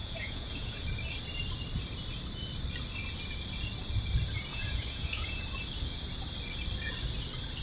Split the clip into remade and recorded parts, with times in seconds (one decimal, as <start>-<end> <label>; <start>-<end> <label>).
0.0-0.8 remade; 0.8-4.5 recorded; 4.5-5.4 remade; 5.4-7.6 recorded